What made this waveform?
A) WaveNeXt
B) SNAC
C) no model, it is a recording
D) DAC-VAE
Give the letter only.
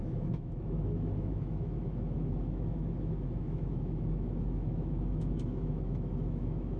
D